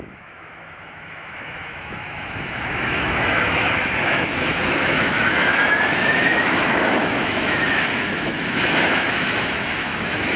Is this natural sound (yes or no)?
no